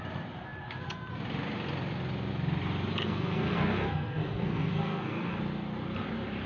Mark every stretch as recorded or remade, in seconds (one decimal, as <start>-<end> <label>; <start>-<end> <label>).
0.0-3.0 recorded; 3.0-5.4 remade; 5.4-6.5 recorded